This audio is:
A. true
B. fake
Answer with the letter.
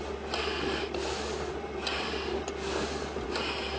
A